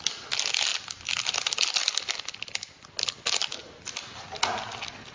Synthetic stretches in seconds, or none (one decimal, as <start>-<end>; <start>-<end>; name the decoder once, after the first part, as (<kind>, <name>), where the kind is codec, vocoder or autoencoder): 0.7-1.7 (vocoder, BigVGAN v2); 3.6-4.4